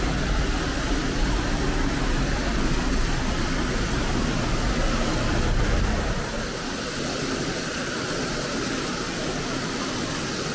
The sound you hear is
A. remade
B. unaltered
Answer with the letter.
B